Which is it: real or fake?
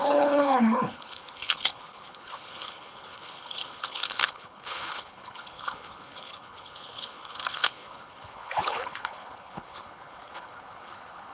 fake